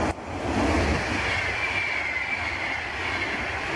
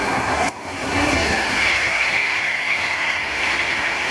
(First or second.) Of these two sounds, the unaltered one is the first